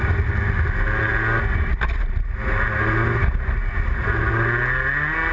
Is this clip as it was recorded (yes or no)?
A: yes